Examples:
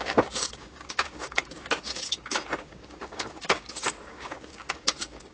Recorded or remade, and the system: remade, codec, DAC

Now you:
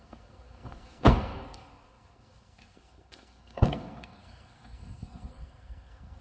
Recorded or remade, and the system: remade, codec, SNAC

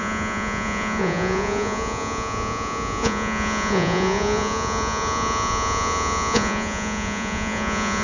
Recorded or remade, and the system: remade, vocoder, Vocos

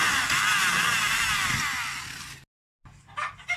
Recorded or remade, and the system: recorded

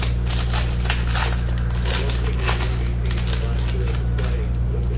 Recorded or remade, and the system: recorded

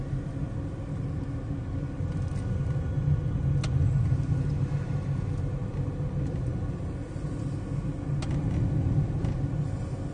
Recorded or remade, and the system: recorded